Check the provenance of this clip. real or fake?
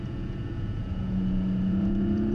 fake